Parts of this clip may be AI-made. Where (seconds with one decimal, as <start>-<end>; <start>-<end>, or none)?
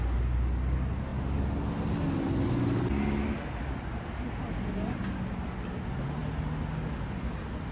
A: none